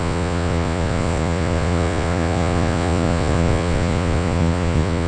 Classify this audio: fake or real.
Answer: fake